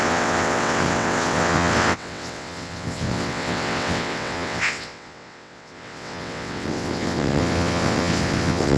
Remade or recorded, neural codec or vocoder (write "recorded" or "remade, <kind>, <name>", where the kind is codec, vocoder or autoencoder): remade, vocoder, WaveNeXt